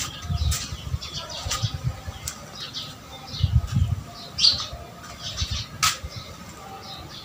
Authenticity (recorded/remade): recorded